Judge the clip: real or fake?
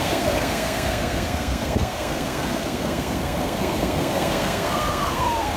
fake